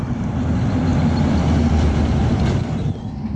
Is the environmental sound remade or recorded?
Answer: remade